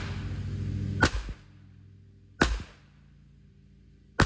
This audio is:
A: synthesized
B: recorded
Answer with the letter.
B